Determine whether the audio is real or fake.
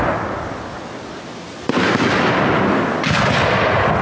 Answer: real